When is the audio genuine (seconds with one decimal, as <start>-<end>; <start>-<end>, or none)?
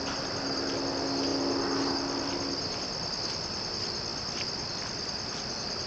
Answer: 0.0-5.9